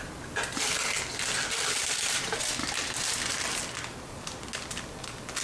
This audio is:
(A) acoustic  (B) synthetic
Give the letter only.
A